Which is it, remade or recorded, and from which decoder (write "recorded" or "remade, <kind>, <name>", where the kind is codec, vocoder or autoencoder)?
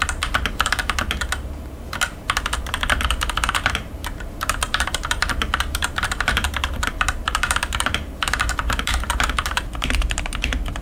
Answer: remade, vocoder, BigVGAN v2